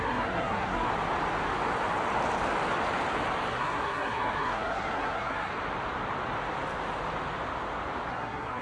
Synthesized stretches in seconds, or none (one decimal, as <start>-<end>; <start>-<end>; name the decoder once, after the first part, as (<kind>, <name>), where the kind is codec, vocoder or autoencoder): 0.0-0.9 (codec, SNAC); 3.5-5.5; 8.1-8.6